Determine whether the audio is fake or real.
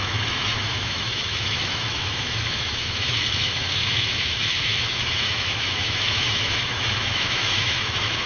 fake